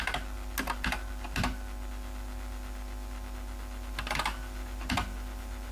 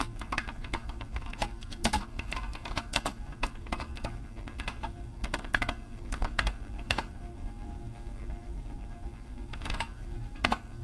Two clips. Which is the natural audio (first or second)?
first